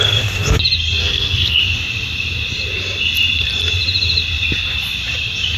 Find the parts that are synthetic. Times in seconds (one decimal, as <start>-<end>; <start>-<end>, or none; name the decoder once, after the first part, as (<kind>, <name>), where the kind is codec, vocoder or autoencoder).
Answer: 1.0-1.6 (codec, SNAC)

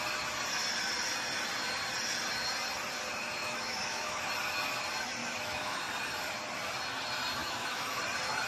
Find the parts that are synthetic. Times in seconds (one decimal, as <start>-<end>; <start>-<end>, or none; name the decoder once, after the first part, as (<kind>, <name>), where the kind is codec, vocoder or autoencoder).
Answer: 3.4-4.3 (autoencoder, DAC-VAE); 5.2-5.8; 7.4-8.0

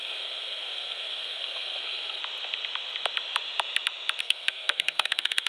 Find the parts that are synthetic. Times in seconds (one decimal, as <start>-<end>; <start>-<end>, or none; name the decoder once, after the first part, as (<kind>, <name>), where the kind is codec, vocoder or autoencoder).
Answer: 0.0-2.2 (codec, SNAC); 4.2-5.5

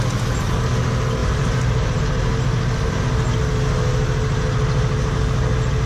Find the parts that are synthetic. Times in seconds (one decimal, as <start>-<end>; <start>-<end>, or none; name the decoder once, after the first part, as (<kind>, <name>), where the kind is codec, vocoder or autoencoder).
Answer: 1.2-2.0 (vocoder, BigVGAN v2)

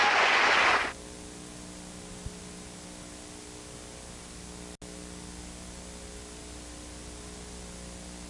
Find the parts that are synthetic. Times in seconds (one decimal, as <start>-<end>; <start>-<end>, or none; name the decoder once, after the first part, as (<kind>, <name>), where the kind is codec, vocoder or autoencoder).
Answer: 0.0-1.0 (vocoder, Vocos)

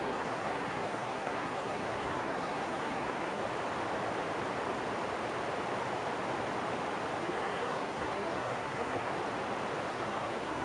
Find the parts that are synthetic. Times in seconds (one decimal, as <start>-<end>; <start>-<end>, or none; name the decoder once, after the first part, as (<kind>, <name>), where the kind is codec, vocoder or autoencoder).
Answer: 0.0-3.4 (codec, SNAC); 7.2-9.1; 9.9-10.6